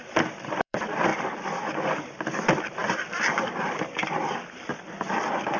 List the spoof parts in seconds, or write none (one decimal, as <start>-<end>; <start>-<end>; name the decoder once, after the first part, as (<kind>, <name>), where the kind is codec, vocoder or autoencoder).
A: 0.0-5.6 (vocoder, BigVGAN v2)